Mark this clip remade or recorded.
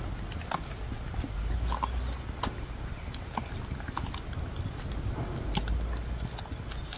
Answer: recorded